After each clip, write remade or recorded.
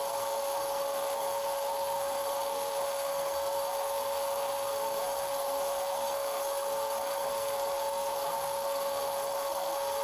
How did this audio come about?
remade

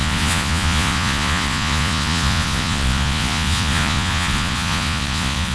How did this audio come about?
remade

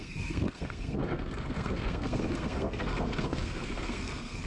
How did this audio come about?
remade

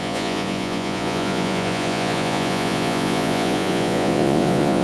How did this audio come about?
remade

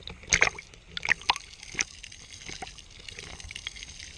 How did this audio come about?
recorded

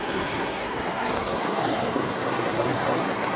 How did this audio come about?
remade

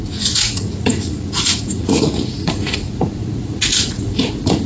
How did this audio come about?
remade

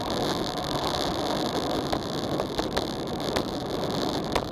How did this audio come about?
recorded